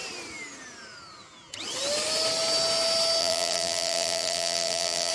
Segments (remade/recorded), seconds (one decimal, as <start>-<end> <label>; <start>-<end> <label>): 0.0-3.2 recorded; 3.2-5.1 remade